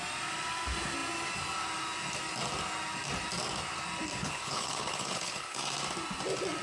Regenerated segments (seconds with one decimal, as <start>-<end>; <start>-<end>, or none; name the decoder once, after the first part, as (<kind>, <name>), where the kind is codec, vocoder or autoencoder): 4.2-5.6 (codec, HILCodec)